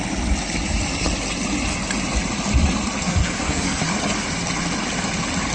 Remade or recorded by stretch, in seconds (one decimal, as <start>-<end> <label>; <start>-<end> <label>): 0.0-3.0 recorded; 3.0-3.8 remade; 3.8-5.5 recorded